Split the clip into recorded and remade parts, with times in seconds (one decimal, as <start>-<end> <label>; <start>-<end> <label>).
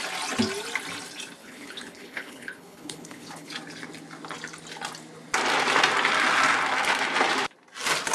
0.0-1.4 recorded; 1.4-3.5 remade; 3.5-8.1 recorded